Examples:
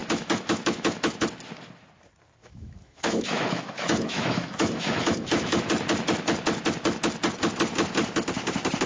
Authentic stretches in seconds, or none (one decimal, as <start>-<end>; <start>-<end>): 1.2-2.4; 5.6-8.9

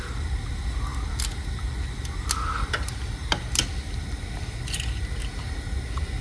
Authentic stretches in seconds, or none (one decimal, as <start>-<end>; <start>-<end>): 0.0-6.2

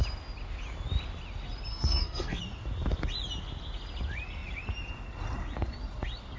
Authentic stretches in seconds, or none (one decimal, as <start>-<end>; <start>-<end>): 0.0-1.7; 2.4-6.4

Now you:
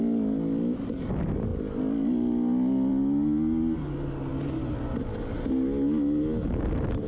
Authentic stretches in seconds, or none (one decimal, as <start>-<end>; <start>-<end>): 0.0-7.1